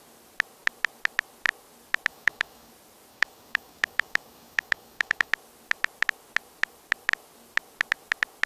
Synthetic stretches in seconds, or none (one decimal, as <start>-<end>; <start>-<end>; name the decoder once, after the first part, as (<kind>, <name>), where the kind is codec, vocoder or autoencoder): 2.1-2.7 (codec, DAC); 3.1-5.3